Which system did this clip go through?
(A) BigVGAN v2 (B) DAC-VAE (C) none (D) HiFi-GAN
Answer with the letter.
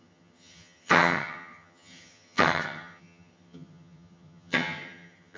D